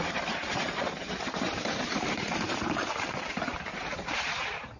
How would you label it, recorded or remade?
remade